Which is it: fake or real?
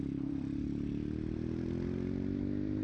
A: fake